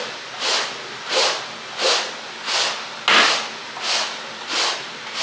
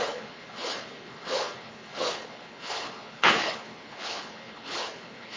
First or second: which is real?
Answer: first